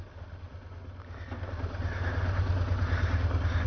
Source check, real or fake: real